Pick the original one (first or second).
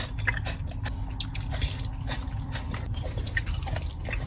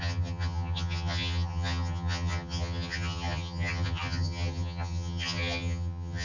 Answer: first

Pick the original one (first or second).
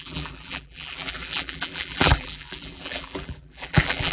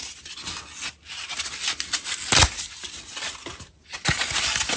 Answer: second